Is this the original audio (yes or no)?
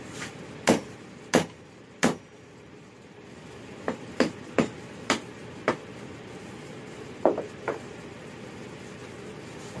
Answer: no